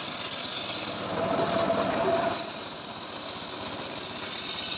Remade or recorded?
recorded